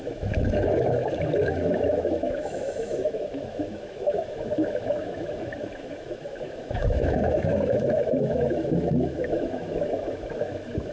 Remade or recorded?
remade